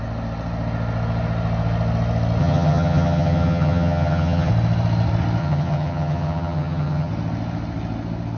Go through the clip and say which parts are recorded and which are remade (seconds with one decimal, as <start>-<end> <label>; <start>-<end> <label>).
0.0-2.4 recorded; 2.4-4.5 remade; 4.5-5.4 recorded; 5.4-7.1 remade; 7.1-8.4 recorded